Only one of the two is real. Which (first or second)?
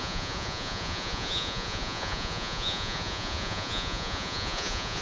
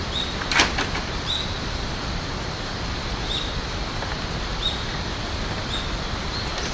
second